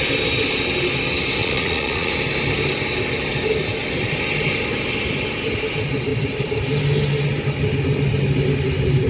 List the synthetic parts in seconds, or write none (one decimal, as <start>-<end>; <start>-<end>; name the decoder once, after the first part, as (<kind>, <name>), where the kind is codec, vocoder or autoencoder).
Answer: 1.4-2.1 (vocoder, Vocos)

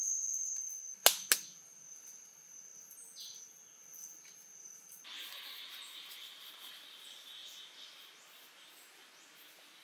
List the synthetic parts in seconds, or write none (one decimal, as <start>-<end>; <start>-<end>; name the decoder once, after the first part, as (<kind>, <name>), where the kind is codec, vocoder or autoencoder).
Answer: none